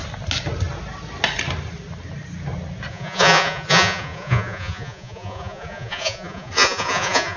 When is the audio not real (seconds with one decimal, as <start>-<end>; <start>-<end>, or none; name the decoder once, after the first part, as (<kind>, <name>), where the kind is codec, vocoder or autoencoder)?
2.9-7.4 (vocoder, Vocos)